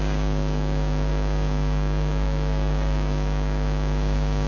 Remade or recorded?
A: remade